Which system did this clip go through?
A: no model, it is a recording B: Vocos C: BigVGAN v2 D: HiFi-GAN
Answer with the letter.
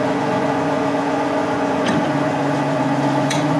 B